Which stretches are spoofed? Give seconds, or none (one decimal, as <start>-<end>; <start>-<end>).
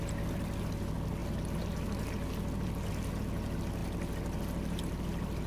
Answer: none